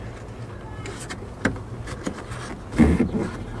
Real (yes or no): yes